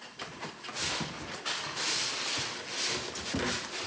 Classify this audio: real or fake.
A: real